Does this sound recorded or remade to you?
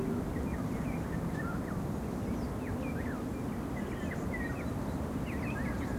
recorded